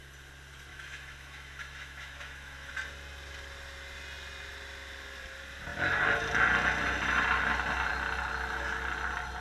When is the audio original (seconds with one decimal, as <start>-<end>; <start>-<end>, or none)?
0.0-0.7; 2.7-9.4